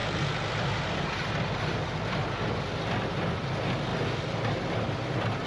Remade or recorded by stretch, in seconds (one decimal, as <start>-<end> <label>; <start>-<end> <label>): 0.0-5.5 recorded